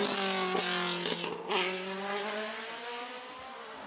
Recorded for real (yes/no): yes